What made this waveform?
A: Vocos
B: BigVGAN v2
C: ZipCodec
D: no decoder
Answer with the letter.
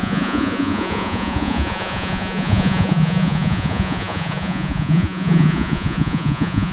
A